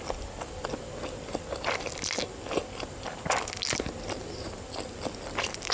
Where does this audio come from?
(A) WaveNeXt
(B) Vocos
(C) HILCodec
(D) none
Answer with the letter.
D